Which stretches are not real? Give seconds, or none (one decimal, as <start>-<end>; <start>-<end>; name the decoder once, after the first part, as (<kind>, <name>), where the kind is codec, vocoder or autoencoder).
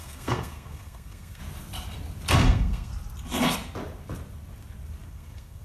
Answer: 0.0-1.4 (codec, SNAC); 2.3-2.9; 5.1-5.6